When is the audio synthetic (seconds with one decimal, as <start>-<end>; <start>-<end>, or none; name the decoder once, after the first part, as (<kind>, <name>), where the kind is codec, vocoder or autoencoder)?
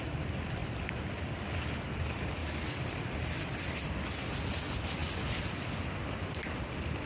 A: 2.4-3.0 (vocoder, BigVGAN v2); 5.0-5.9